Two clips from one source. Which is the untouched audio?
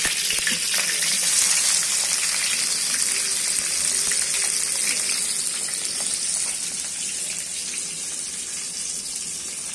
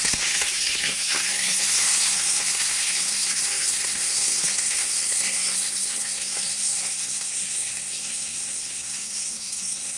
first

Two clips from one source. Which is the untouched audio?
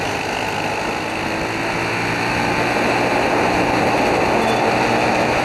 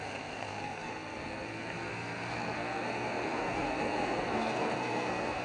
first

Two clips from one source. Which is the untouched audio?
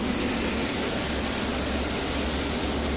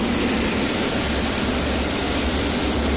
first